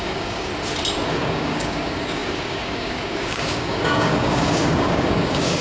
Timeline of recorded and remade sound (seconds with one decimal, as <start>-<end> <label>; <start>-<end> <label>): 0.0-0.5 remade; 0.5-1.1 recorded; 1.1-5.6 remade